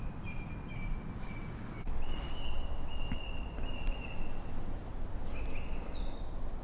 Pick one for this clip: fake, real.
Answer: real